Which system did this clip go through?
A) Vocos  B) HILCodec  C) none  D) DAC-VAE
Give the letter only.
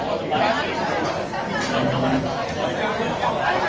C